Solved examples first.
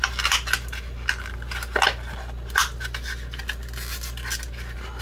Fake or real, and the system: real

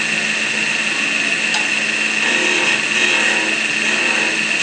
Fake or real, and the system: real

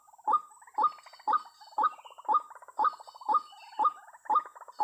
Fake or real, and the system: real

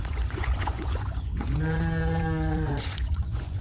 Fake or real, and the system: fake, vocoder, Vocos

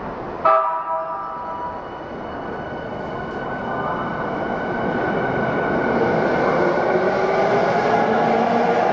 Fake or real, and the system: real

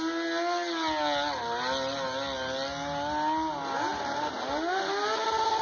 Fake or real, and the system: real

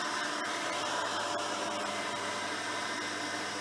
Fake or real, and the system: real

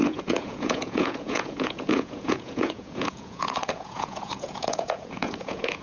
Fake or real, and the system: fake, vocoder, Vocos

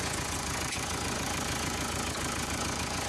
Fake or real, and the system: fake, vocoder, Vocos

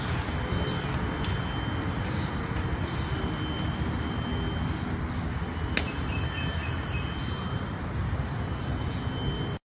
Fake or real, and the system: real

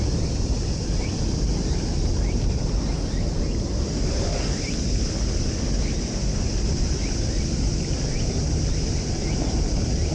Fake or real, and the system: real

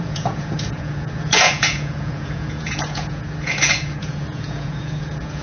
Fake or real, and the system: fake, vocoder, Vocos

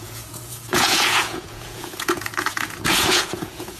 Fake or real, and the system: fake, vocoder, Vocos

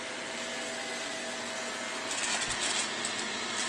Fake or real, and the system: real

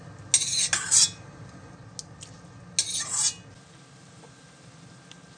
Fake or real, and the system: real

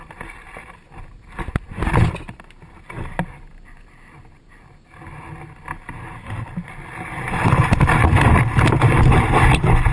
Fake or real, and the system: real